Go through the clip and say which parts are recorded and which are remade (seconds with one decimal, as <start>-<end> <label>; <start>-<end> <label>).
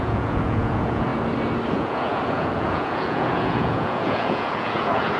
0.0-1.1 remade; 1.1-1.7 recorded; 1.7-5.2 remade